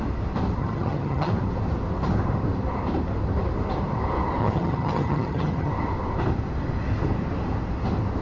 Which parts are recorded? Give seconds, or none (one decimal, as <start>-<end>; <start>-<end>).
0.0-0.6; 1.3-4.4; 5.7-8.2